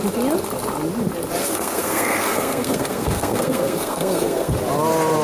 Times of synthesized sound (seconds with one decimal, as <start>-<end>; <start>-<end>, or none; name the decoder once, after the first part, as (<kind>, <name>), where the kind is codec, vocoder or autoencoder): 1.4-4.5 (codec, SNAC)